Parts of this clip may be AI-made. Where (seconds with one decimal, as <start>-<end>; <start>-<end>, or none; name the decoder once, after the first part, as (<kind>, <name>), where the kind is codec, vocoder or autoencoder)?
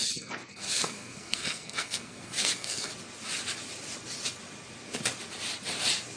0.0-2.9 (codec, SNAC)